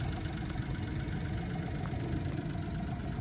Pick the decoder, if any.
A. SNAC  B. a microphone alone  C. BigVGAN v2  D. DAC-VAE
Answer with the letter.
B